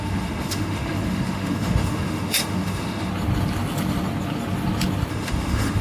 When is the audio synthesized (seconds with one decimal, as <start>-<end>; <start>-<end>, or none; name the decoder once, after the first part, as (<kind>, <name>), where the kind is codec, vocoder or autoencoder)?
0.0-3.1 (autoencoder, DAC-VAE); 5.1-5.8